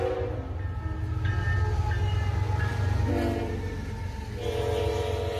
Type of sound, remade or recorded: recorded